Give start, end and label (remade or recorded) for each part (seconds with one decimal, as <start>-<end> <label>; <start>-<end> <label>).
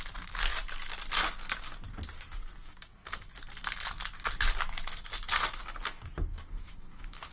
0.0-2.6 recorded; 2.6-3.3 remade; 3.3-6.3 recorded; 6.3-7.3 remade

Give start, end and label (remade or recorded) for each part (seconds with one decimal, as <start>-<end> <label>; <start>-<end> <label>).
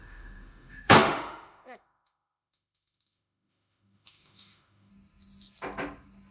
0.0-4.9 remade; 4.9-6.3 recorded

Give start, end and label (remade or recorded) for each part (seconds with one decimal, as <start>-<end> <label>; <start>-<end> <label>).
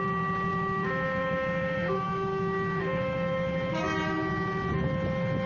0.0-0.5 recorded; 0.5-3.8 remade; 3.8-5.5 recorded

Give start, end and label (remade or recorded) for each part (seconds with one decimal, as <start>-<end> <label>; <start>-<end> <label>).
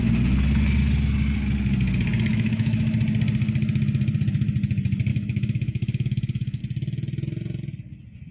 0.0-2.3 recorded; 2.3-2.8 remade; 2.8-5.1 recorded; 5.1-6.6 remade; 6.6-8.3 recorded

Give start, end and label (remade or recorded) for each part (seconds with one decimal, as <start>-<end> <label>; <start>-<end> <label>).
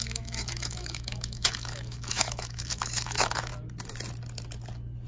0.0-3.5 remade; 3.5-5.1 recorded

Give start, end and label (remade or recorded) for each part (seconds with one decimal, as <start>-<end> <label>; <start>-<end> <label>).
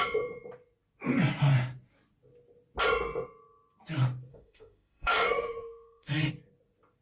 0.0-4.3 recorded; 4.3-6.3 remade; 6.3-7.0 recorded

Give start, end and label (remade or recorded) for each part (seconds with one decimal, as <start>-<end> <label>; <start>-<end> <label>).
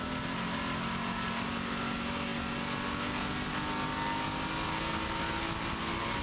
0.0-6.2 recorded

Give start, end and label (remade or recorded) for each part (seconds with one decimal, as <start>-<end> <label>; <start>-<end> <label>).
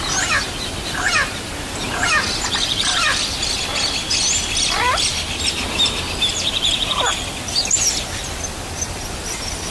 0.0-9.7 recorded